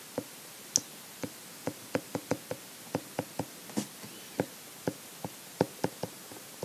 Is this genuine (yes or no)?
yes